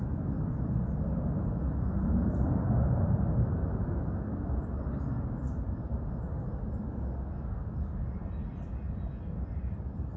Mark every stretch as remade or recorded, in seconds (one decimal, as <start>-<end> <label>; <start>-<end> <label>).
0.0-10.2 recorded

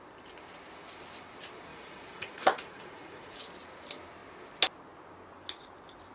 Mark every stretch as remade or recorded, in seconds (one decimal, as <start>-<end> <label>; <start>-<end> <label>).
0.0-1.7 recorded; 1.7-3.4 remade; 3.4-6.1 recorded

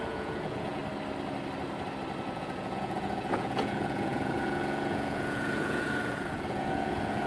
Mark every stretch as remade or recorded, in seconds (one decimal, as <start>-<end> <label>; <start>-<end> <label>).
0.0-0.8 remade; 0.8-2.2 recorded; 2.2-7.3 remade

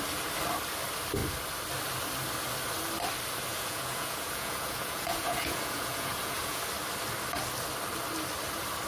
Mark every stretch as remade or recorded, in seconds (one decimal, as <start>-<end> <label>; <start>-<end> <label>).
0.0-3.5 recorded; 3.5-6.6 remade; 6.6-8.9 recorded

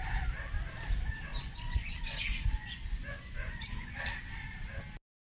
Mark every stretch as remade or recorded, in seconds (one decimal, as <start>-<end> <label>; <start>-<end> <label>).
0.0-1.3 recorded; 1.3-4.0 remade; 4.0-5.2 recorded